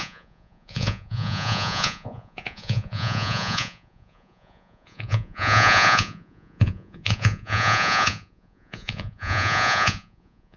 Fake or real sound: fake